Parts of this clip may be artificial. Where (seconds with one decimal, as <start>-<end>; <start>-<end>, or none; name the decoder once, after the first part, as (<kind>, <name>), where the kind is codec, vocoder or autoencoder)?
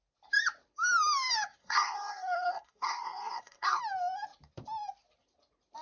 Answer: 1.6-3.8 (codec, SNAC)